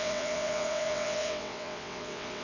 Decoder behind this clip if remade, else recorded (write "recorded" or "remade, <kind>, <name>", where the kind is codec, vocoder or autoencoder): remade, vocoder, WaveNeXt